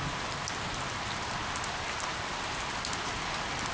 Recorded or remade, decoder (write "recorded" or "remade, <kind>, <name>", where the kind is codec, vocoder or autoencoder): recorded